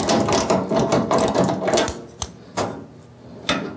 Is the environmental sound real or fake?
real